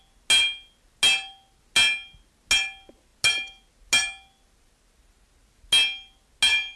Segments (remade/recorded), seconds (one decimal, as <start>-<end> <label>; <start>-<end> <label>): 0.0-6.8 recorded